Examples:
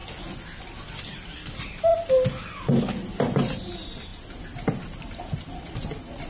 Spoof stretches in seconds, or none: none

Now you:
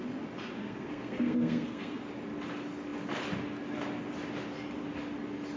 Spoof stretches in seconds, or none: 0.6-2.1 (codec, SNAC)

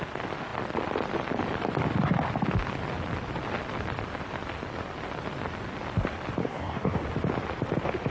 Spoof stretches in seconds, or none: 6.4-7.0 (codec, DAC)

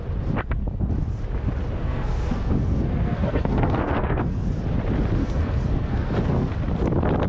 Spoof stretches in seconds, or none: 1.8-4.4 (codec, SNAC); 5.2-6.5

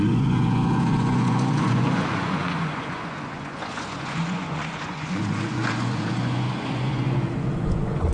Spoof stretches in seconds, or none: 0.0-8.1 (vocoder, Vocos)

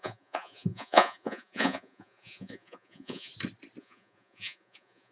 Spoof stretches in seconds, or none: 0.0-3.3 (vocoder, Vocos); 3.8-5.1

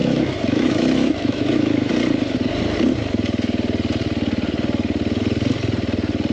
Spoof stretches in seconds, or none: 0.0-1.9 (autoencoder, DAC-VAE)

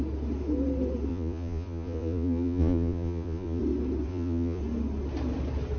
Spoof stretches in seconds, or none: 1.1-3.6 (vocoder, Vocos); 4.1-4.6